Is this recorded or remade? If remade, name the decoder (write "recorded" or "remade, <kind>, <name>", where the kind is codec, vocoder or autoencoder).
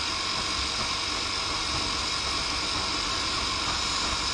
recorded